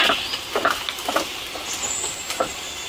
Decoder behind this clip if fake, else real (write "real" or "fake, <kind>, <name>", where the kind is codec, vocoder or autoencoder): real